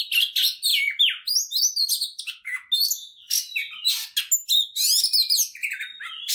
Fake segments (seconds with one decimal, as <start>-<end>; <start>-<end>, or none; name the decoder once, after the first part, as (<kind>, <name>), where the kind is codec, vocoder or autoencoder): none